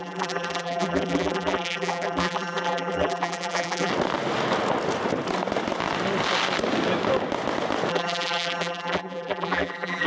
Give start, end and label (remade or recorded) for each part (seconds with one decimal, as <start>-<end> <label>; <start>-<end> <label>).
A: 0.0-3.9 remade; 3.9-7.9 recorded; 7.9-10.1 remade